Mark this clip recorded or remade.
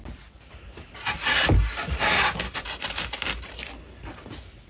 recorded